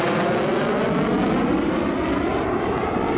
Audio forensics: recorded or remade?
recorded